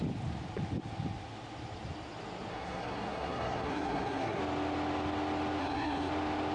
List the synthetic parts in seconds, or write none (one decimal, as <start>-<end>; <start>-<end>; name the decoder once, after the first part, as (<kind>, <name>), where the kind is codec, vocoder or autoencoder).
2.5-4.4 (codec, SNAC); 5.6-6.1

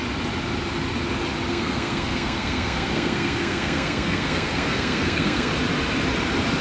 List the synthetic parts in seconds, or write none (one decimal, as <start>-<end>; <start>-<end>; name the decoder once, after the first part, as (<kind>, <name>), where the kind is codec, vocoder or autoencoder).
1.5-5.5 (codec, SNAC)

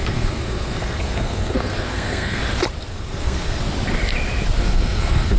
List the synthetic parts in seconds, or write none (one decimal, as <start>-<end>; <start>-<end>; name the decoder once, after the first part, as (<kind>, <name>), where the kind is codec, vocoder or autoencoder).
0.0-2.4 (codec, SNAC); 2.9-3.6; 4.6-5.4

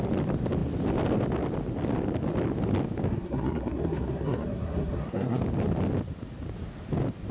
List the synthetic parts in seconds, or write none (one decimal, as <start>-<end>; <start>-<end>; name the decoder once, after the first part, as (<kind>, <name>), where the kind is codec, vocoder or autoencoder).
3.1-5.4 (codec, SNAC)